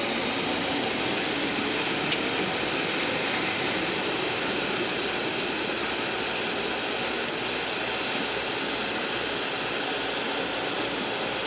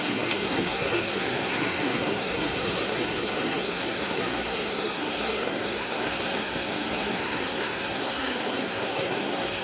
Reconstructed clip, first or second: second